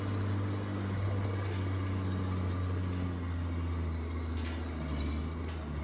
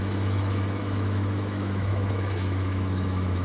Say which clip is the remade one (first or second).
second